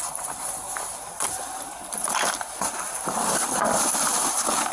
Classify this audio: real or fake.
fake